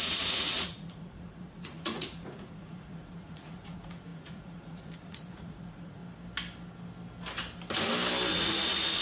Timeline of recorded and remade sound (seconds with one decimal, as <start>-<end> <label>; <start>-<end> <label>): 0.0-6.0 remade; 6.0-8.3 recorded; 8.3-9.0 remade